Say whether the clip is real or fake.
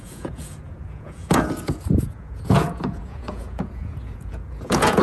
fake